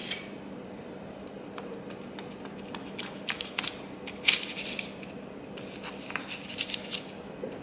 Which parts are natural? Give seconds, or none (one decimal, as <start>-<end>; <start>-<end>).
0.0-2.8; 3.6-7.6